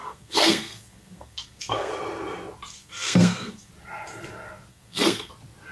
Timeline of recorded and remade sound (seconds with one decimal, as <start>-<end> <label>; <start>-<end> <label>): 0.0-1.9 remade; 1.9-2.7 recorded; 2.7-3.7 remade; 3.7-4.7 recorded; 4.7-5.3 remade; 5.3-5.7 recorded